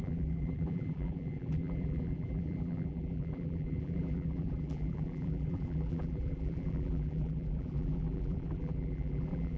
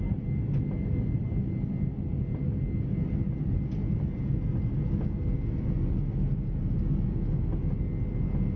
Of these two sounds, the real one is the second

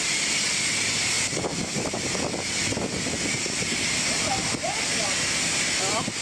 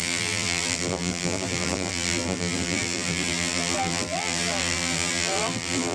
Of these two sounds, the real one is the first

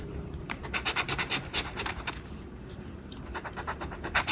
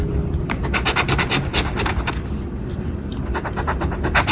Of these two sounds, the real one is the second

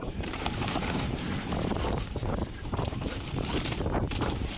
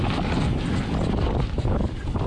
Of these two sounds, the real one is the second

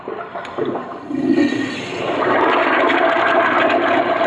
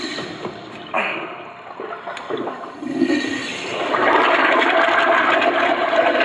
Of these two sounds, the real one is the first